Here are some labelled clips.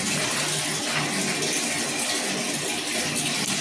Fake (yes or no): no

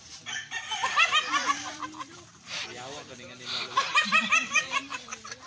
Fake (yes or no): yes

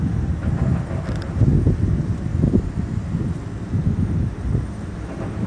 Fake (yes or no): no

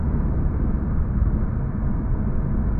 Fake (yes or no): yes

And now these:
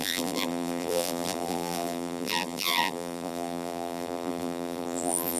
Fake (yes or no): yes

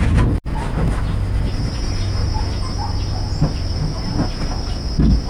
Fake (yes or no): no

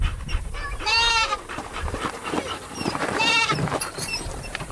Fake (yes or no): yes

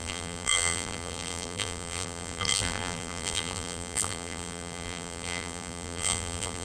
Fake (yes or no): yes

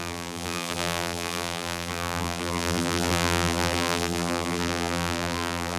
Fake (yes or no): yes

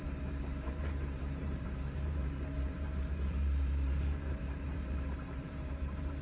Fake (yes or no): yes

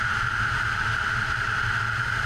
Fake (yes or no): no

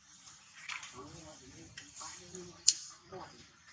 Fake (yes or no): yes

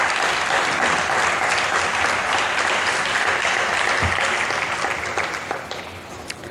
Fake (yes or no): yes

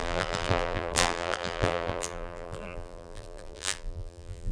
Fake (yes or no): yes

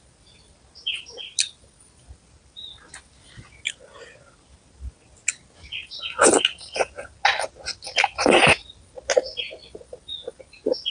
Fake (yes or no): no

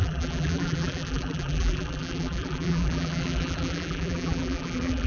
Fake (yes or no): yes